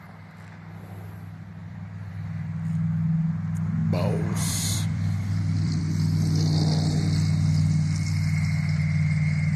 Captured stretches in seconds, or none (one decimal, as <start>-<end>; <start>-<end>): 0.0-1.6; 2.1-3.8; 5.8-9.6